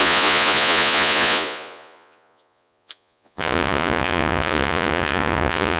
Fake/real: fake